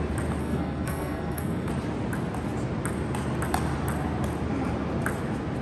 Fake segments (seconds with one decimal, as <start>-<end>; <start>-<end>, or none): 0.4-1.7